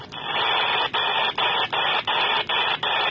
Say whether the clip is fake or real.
real